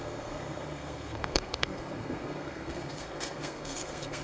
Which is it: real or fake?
fake